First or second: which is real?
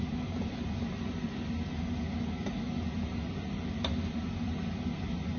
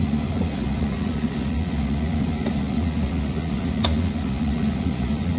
first